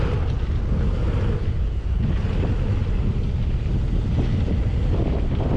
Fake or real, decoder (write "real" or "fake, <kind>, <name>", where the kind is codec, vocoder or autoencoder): real